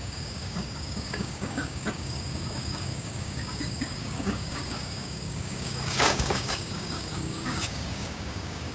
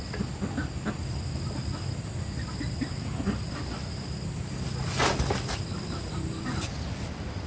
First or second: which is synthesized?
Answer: first